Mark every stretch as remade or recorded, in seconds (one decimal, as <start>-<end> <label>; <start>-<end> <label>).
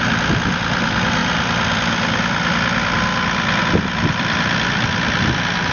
0.0-5.7 recorded